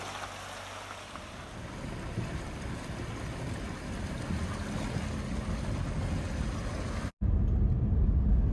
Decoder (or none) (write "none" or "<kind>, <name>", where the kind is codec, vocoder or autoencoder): none